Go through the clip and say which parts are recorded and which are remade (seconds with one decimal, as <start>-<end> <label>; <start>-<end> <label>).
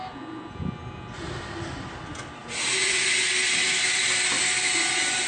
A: 0.0-5.3 recorded